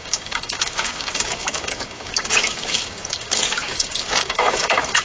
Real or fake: fake